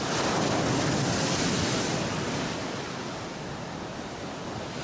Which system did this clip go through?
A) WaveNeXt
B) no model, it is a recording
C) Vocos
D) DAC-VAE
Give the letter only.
B